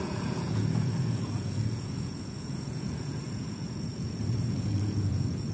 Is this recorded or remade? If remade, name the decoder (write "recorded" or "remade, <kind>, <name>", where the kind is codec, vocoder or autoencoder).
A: remade, vocoder, Vocos